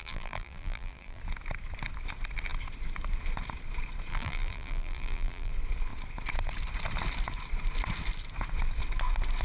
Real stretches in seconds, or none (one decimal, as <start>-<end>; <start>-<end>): 1.2-4.1; 5.5-9.4